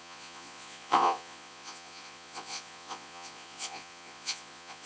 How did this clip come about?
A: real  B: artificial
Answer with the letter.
B